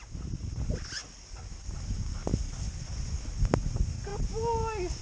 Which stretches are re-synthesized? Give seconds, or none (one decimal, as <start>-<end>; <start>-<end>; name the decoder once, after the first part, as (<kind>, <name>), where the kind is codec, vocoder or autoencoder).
none